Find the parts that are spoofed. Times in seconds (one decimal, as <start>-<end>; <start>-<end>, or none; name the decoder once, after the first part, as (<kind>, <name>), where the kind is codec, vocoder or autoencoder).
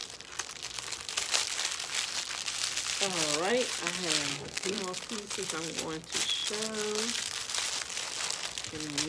4.3-4.8 (codec, SNAC)